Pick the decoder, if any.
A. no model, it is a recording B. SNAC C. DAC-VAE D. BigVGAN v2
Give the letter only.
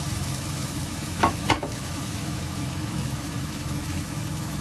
C